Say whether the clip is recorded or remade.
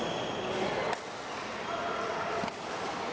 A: recorded